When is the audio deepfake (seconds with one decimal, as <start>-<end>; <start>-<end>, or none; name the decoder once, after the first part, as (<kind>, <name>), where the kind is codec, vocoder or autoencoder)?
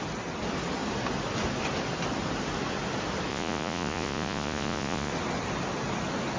3.3-5.1 (vocoder, Vocos)